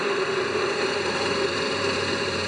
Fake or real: fake